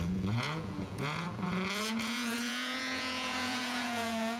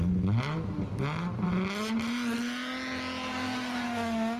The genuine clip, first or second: second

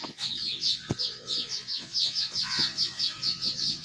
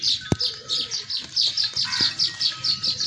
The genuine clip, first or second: second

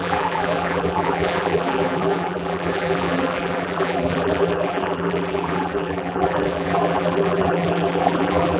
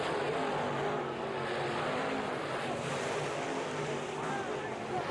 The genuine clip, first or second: second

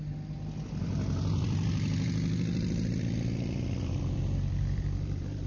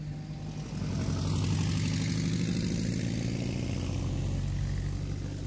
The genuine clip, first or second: second